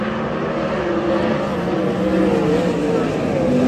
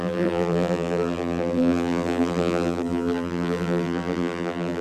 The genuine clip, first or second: first